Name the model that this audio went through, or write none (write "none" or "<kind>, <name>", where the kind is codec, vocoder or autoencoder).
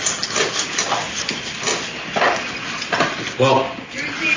none